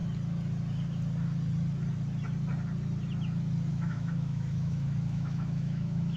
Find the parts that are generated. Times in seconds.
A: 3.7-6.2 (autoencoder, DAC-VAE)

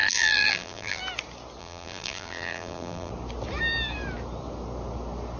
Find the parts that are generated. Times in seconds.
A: 0.0-1.0 (vocoder, BigVGAN v2); 1.6-3.1

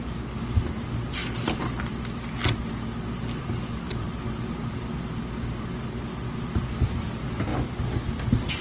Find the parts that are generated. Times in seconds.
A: none

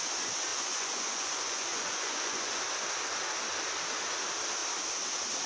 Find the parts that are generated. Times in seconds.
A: 0.5-2.6 (vocoder, Vocos)